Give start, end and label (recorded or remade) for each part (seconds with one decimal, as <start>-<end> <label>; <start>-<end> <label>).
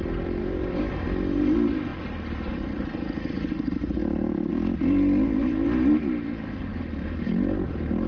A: 0.0-0.4 recorded; 0.4-0.9 remade; 0.9-8.1 recorded